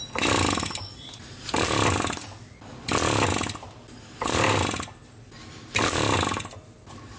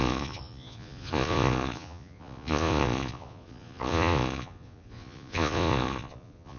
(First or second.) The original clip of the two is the first